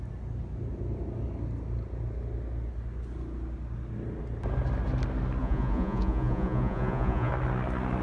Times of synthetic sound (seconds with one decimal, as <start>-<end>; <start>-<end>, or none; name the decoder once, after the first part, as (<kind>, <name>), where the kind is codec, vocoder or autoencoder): 5.4-7.3 (vocoder, Vocos)